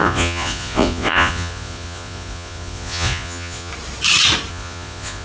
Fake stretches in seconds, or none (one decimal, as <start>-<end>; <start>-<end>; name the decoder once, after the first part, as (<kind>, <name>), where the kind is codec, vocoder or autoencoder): 0.0-3.7 (vocoder, Vocos); 4.5-5.2